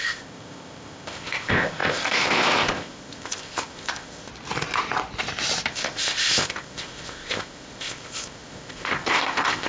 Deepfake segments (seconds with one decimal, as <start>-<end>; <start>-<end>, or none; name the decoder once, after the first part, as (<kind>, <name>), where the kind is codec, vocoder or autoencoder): 0.0-4.3 (codec, ZipCodec); 5.7-9.7